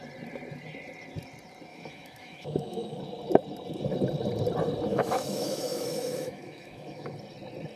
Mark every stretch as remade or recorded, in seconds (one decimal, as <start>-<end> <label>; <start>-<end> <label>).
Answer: 0.0-1.7 recorded; 1.7-3.0 remade; 3.0-4.9 recorded; 4.9-7.1 remade; 7.1-7.8 recorded